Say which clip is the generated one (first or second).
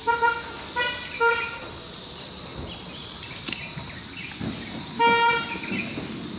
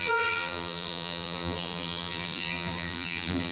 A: second